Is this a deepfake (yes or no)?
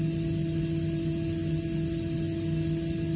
no